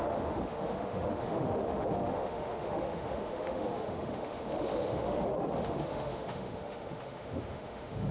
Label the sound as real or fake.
fake